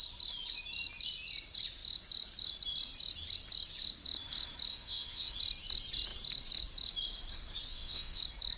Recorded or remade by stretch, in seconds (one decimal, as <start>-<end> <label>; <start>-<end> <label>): 0.0-4.7 recorded; 4.7-5.3 remade; 5.3-7.7 recorded; 7.7-8.2 remade; 8.2-8.6 recorded